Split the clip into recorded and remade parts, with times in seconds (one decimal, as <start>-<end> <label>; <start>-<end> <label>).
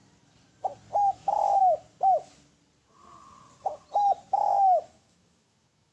0.0-1.1 recorded; 1.1-1.6 remade; 1.6-4.3 recorded; 4.3-5.9 remade